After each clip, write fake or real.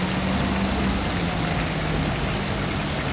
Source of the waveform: real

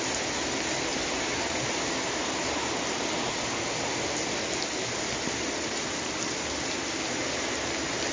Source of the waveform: real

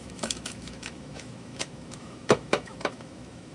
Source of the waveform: fake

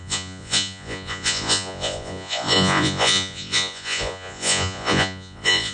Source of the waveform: fake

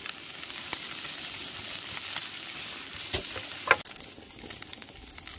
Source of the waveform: real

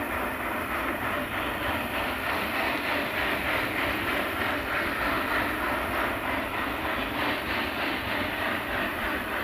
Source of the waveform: real